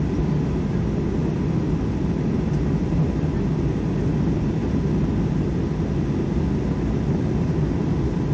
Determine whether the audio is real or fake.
real